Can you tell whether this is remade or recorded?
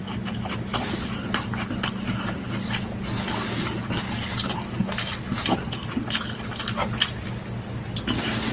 recorded